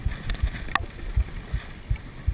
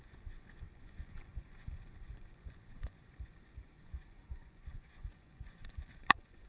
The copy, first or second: second